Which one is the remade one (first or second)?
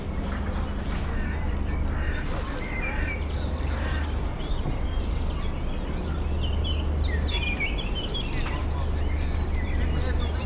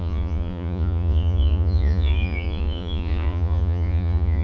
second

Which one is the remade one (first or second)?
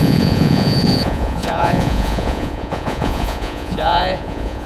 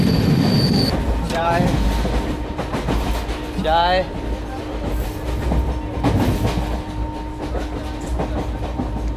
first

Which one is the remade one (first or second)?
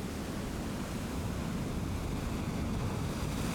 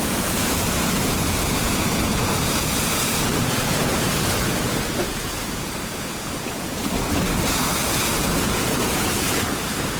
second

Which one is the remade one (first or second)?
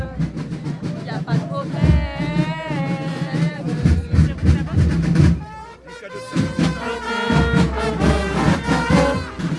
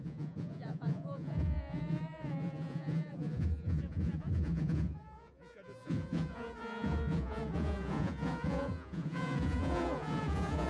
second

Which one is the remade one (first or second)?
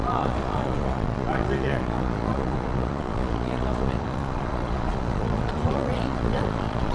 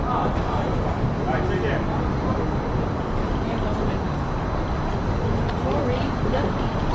first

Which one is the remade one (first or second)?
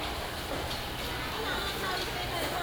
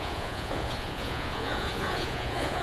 second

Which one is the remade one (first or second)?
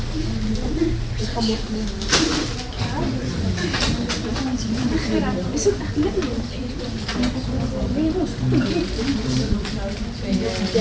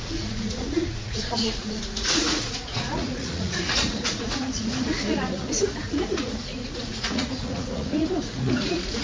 second